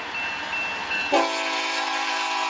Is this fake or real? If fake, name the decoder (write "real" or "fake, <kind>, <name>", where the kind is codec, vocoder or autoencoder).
real